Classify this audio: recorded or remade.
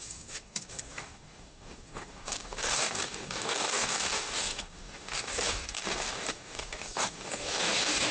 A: remade